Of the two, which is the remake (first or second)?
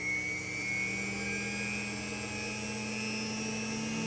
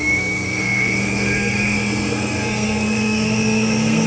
second